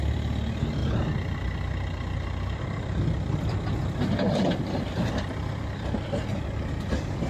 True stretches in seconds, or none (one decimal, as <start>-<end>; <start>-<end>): 0.8-5.2